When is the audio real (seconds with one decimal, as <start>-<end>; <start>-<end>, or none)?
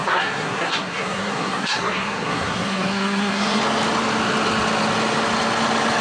3.6-6.0